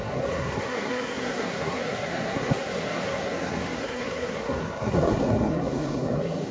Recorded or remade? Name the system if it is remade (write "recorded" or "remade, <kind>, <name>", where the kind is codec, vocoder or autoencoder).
remade, codec, SNAC